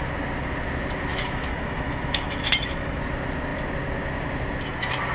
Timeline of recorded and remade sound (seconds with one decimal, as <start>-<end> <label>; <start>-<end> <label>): 0.0-1.1 recorded; 1.1-3.0 remade; 3.0-5.1 recorded